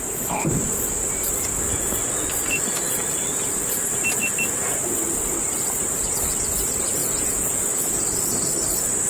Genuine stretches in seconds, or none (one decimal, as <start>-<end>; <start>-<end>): 0.0-7.0; 7.7-9.1